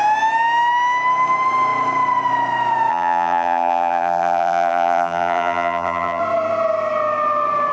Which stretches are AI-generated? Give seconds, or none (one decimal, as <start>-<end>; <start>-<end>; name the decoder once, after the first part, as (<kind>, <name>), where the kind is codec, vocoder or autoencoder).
2.9-6.2 (vocoder, BigVGAN v2)

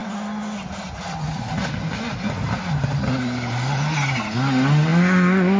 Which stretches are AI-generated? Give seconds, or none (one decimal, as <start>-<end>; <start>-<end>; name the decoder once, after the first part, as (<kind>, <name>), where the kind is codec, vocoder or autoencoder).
none

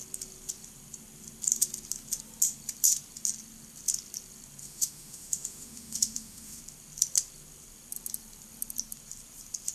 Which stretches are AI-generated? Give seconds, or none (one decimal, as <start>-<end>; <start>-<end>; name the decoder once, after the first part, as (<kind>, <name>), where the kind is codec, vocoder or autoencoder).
4.6-6.6 (autoencoder, DAC-VAE)